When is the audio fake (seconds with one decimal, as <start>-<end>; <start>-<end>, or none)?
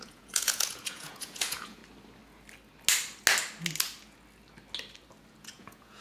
0.0-1.8; 5.4-6.0